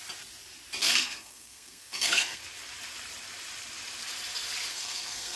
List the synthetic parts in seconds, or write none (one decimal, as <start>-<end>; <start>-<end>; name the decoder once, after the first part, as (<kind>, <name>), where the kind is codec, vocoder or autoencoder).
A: 0.8-2.4 (codec, SNAC); 4.7-5.4